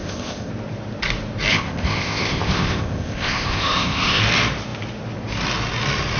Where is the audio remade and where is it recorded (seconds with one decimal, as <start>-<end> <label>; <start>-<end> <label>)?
0.0-0.5 remade; 0.5-1.5 recorded; 1.5-4.2 remade; 4.2-6.2 recorded